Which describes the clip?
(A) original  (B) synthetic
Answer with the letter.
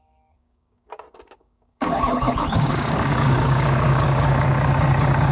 B